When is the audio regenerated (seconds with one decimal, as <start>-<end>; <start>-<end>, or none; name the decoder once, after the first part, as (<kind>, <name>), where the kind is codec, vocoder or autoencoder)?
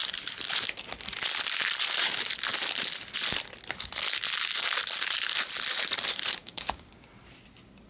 6.4-7.1 (codec, DAC)